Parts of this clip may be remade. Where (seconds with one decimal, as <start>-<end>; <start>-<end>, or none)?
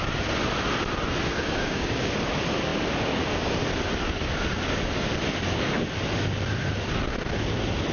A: 1.3-2.1